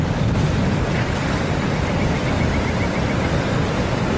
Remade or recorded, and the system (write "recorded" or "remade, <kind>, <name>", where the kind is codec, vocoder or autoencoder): remade, vocoder, BigVGAN v2